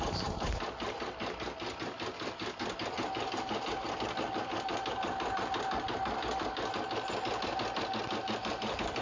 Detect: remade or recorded recorded